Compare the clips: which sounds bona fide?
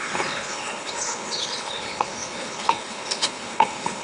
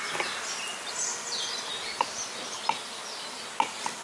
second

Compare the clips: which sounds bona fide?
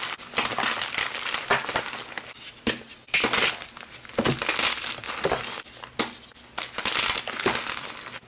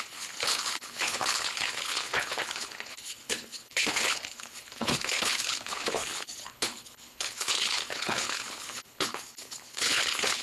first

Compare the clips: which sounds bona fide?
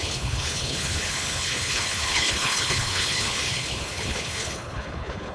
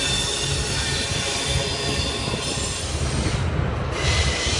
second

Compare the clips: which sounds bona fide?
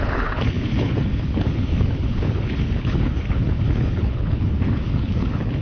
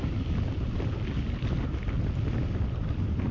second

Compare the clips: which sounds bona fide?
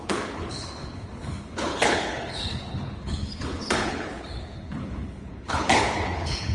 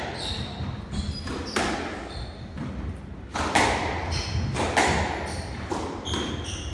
second